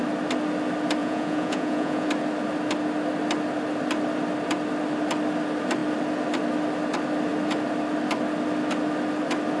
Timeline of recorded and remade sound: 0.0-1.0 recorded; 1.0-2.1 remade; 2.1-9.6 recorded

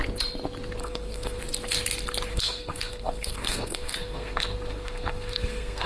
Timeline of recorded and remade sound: 0.0-0.8 recorded; 0.8-1.4 remade; 1.4-2.3 recorded; 2.3-5.9 remade